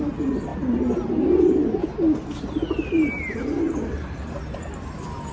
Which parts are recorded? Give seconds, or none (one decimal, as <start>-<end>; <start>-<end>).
0.0-5.3